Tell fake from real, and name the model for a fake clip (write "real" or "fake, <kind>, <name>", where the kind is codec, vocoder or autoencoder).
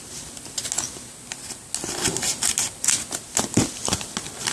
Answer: real